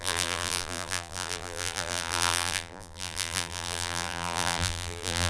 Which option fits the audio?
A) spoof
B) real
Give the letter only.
A